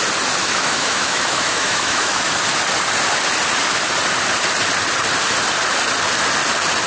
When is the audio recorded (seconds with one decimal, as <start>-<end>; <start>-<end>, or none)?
0.0-0.4; 2.2-6.9